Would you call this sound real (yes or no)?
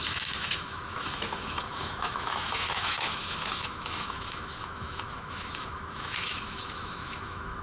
no